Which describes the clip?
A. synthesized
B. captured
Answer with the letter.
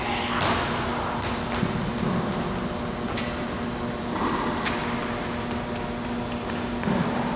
B